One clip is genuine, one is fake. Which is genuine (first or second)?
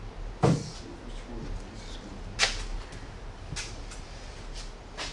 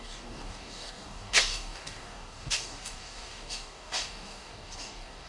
first